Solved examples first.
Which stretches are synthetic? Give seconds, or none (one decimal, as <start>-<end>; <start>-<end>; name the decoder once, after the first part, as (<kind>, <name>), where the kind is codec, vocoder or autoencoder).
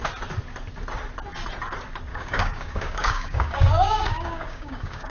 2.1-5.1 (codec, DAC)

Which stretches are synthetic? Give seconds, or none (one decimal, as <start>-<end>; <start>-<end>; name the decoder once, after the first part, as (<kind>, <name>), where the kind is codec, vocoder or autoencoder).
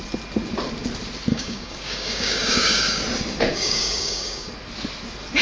1.3-3.0 (codec, DAC); 3.5-4.5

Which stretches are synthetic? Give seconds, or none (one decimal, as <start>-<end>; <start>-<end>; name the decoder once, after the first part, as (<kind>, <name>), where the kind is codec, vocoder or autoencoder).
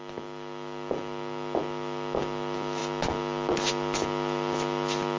none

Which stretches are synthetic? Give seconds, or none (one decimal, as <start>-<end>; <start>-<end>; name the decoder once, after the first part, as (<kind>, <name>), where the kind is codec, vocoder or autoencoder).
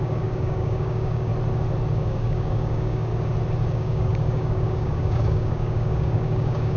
0.0-1.3 (codec, DAC); 1.9-3.1; 3.7-6.8